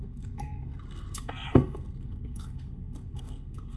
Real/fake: fake